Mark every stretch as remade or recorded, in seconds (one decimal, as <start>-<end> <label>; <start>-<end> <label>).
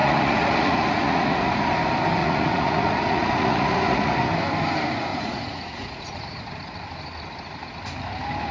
0.0-1.7 remade; 1.7-2.2 recorded; 2.2-4.3 remade; 4.3-5.1 recorded; 5.1-6.5 remade; 6.5-8.5 recorded